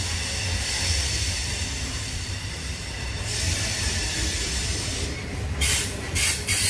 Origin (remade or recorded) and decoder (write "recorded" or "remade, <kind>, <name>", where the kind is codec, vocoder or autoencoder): recorded